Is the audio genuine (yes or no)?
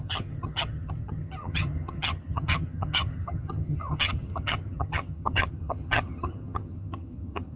no